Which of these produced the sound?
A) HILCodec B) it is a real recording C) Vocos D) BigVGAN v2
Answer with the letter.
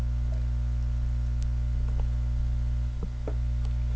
B